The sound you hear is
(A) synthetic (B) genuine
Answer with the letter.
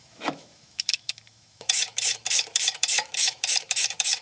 A